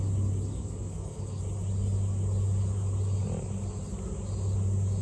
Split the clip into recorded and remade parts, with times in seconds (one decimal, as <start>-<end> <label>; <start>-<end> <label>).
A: 0.0-0.5 recorded; 0.5-1.4 remade; 1.4-5.0 recorded